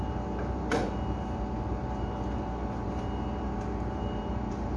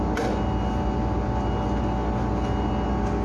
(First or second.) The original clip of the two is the second